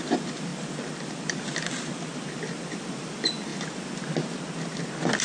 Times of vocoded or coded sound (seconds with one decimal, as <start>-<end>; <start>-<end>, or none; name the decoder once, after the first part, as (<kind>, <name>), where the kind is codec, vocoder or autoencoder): none